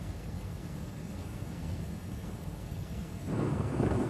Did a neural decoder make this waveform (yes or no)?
yes